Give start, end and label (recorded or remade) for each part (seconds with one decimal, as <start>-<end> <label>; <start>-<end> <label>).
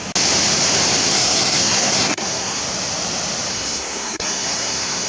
0.0-1.1 recorded; 1.1-2.6 remade; 2.6-3.5 recorded; 3.5-5.1 remade